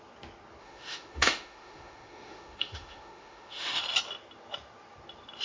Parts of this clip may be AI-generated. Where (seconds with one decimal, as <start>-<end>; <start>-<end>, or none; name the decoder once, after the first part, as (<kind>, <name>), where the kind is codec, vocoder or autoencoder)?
0.6-3.8 (autoencoder, DAC-VAE)

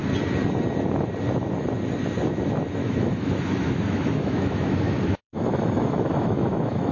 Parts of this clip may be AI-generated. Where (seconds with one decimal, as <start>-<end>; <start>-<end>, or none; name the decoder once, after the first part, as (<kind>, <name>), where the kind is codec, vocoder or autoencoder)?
2.8-6.9 (autoencoder, DAC-VAE)

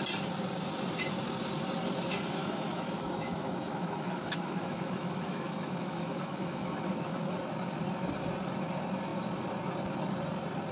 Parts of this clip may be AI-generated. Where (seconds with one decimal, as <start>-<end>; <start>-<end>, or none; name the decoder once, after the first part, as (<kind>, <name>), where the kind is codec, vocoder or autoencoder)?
2.4-7.4 (autoencoder, DAC-VAE)

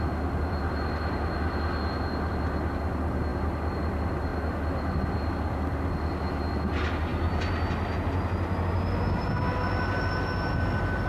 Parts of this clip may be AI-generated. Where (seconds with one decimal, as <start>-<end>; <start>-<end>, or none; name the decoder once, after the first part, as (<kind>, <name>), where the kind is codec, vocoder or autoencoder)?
none

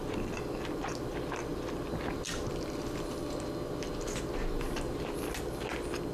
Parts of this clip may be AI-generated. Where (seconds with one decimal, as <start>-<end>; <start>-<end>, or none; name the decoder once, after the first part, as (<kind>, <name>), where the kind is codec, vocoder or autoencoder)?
none

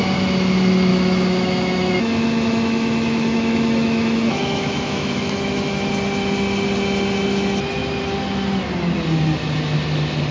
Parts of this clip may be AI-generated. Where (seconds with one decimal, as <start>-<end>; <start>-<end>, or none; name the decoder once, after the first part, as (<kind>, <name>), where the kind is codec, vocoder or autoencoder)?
0.9-5.9 (autoencoder, DAC-VAE)